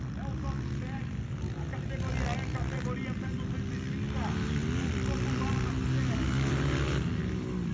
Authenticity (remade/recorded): recorded